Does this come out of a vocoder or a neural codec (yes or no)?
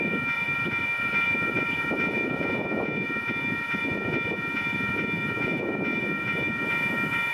yes